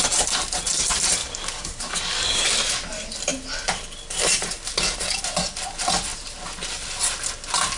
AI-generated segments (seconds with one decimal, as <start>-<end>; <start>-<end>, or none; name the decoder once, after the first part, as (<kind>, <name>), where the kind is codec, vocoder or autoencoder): 1.2-2.4 (codec, DAC)

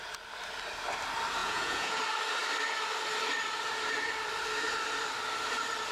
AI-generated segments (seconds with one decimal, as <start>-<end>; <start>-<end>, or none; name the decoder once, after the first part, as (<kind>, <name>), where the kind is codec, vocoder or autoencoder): 1.4-2.0 (vocoder, Vocos)

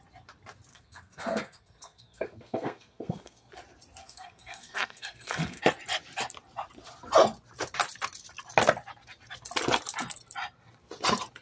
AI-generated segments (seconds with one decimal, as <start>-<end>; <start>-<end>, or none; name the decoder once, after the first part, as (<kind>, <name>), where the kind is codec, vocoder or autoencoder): 0.7-3.5 (codec, SNAC); 4.0-5.6

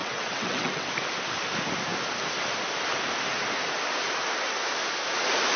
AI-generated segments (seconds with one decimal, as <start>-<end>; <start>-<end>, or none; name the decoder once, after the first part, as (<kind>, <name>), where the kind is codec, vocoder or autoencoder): 0.0-0.9 (vocoder, WaveNeXt)

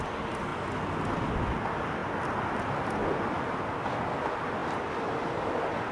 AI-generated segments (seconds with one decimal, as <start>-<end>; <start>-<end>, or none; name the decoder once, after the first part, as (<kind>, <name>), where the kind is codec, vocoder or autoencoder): 2.0-2.6 (vocoder, BigVGAN v2); 4.6-5.5

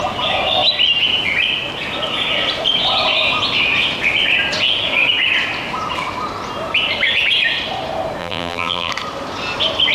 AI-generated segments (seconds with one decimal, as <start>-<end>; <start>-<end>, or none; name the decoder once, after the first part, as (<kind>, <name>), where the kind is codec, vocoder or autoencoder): 8.2-8.9 (vocoder, BigVGAN v2)

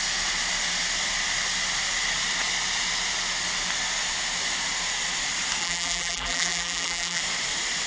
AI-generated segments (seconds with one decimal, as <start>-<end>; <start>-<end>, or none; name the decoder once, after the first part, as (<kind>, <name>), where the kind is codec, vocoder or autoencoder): 5.6-7.2 (vocoder, BigVGAN v2)